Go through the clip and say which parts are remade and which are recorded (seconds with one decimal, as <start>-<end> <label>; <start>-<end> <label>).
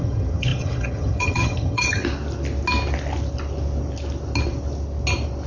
0.0-2.0 remade; 2.0-5.5 recorded